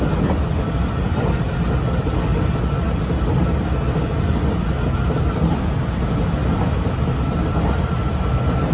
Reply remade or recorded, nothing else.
recorded